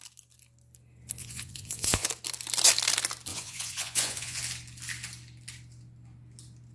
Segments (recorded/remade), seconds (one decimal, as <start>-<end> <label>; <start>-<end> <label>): 0.0-1.2 recorded; 1.2-2.1 remade; 2.1-3.3 recorded; 3.3-4.4 remade; 4.4-6.7 recorded